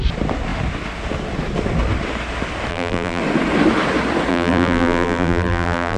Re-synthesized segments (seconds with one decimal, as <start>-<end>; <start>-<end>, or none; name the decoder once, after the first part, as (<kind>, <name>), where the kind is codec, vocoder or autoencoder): 2.7-3.2 (vocoder, BigVGAN v2); 4.3-6.0